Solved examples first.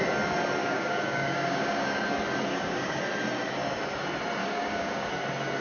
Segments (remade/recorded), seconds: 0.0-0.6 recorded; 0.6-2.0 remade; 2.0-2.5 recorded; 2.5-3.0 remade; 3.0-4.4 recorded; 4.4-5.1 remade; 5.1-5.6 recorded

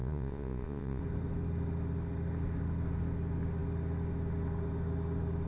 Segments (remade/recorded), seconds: 0.0-1.0 remade; 1.0-5.5 recorded

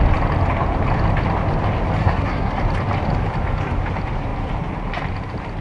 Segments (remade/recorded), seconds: 0.0-2.0 recorded; 2.0-2.6 remade; 2.6-5.6 recorded

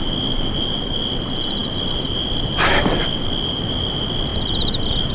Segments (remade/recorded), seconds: 0.0-4.3 remade; 4.3-5.1 recorded

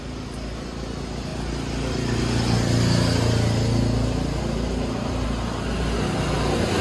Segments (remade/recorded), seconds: 0.0-6.8 recorded

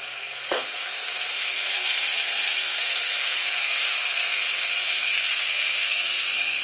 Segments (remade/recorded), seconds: 0.0-6.6 remade